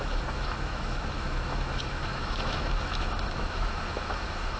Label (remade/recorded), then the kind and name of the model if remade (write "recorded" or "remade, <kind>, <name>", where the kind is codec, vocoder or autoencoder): remade, autoencoder, DAC-VAE